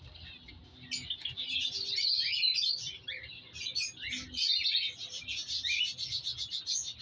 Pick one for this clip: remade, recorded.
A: recorded